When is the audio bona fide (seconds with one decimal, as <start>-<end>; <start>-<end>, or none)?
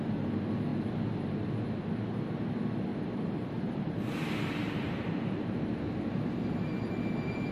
0.0-2.9